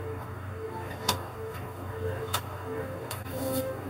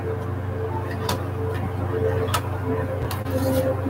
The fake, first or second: first